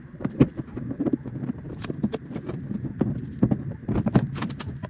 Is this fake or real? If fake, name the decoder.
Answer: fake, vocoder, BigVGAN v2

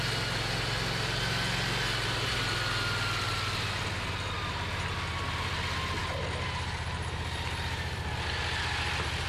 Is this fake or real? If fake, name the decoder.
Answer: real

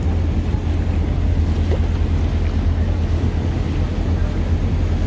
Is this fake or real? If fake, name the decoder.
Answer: real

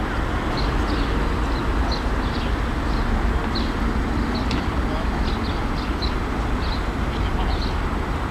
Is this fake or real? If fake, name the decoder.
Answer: real